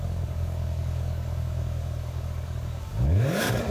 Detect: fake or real fake